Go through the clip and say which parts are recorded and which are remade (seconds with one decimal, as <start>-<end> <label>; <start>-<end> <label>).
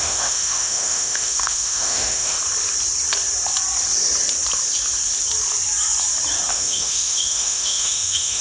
0.0-2.4 remade; 2.4-6.5 recorded; 6.5-8.4 remade